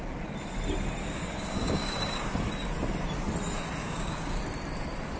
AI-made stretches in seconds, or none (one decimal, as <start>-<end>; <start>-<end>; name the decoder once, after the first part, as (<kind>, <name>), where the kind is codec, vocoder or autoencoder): 1.0-2.3 (codec, DAC); 3.8-4.4